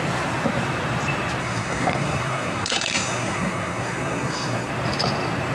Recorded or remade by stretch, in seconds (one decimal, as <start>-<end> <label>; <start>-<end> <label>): 0.0-1.4 recorded; 1.4-4.7 remade; 4.7-5.5 recorded